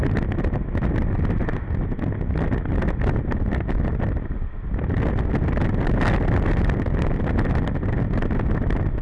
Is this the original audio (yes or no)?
yes